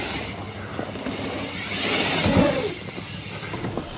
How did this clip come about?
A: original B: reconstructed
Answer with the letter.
A